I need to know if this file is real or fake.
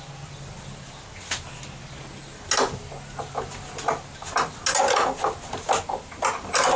real